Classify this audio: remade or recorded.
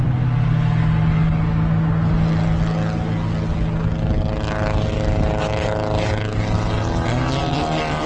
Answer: recorded